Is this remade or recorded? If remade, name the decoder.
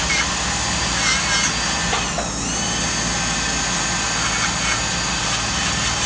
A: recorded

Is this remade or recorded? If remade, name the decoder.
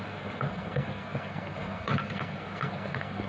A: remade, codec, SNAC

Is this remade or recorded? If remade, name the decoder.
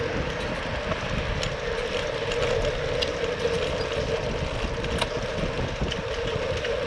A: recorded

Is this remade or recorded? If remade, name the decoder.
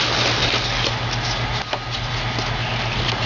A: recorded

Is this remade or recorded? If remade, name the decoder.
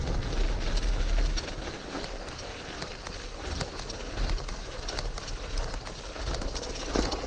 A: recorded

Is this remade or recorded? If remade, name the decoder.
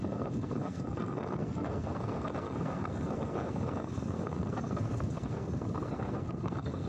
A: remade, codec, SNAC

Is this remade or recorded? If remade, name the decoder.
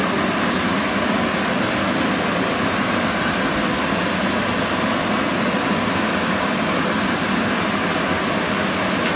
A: recorded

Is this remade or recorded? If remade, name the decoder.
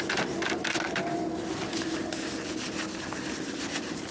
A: recorded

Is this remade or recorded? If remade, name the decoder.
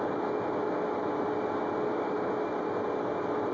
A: recorded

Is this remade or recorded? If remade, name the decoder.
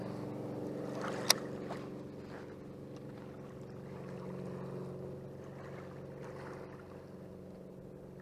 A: recorded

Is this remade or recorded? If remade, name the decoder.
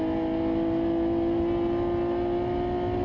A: recorded